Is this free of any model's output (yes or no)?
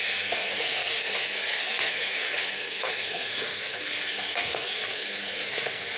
no